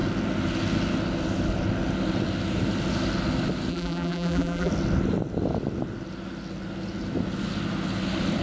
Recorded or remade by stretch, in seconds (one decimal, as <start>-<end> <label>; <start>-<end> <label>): 0.0-3.7 recorded; 3.7-4.7 remade; 4.7-8.4 recorded